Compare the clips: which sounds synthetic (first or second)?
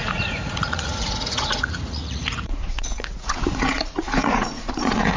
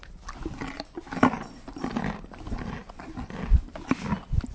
first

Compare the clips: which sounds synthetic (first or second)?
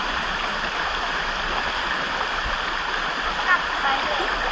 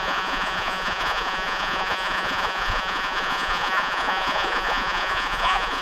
second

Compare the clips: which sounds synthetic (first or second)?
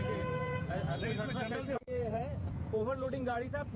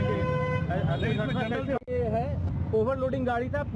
first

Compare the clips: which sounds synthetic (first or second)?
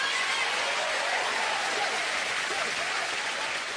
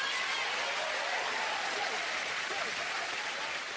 first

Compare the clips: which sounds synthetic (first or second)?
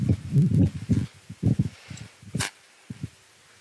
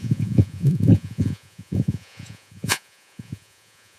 second